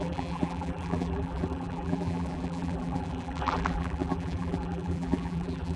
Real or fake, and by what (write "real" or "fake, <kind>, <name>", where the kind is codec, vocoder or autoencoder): fake, vocoder, BigVGAN v2